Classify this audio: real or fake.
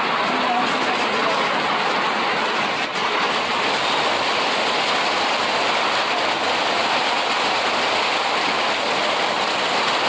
real